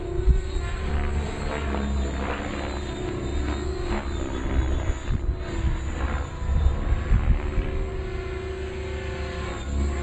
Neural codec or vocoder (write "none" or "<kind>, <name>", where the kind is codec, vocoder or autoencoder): vocoder, BigVGAN v2